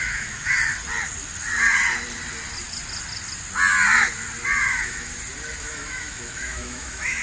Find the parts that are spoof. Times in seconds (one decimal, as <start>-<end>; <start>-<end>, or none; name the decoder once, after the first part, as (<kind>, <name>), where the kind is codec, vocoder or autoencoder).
0.0-0.5 (autoencoder, DAC-VAE); 4.6-5.1; 5.6-7.2